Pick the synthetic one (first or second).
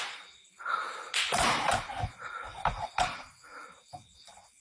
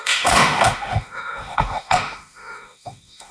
second